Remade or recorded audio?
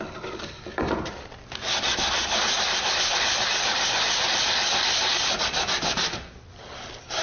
remade